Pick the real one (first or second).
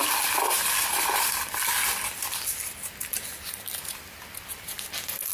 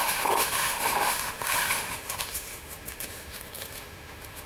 first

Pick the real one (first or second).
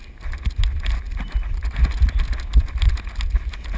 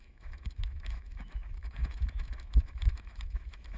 first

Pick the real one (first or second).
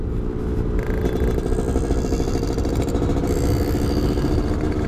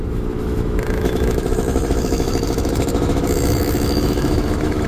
first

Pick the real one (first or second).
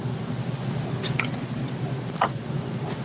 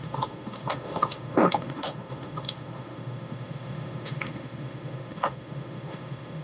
first